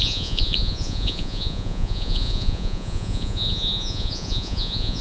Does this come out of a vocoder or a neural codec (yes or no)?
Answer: yes